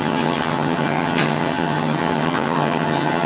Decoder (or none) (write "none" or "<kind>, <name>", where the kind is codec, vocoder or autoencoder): vocoder, HiFi-GAN